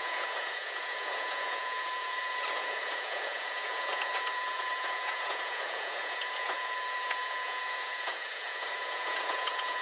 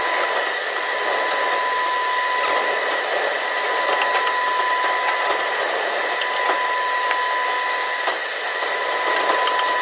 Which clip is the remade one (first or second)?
first